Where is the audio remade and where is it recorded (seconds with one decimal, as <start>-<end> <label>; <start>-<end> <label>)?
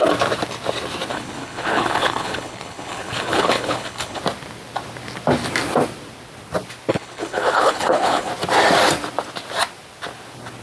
0.0-1.1 recorded; 1.1-4.2 remade; 4.2-6.9 recorded; 6.9-8.3 remade; 8.3-10.6 recorded